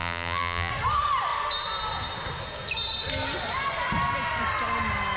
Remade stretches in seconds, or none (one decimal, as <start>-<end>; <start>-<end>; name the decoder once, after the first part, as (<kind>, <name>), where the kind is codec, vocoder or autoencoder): 0.0-0.7 (vocoder, BigVGAN v2)